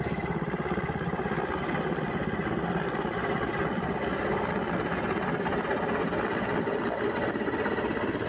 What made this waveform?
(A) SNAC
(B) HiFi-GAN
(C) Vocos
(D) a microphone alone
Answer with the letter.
D